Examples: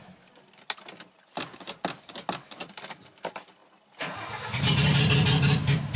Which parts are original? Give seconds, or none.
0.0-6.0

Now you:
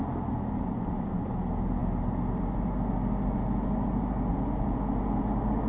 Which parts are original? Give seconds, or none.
0.0-5.7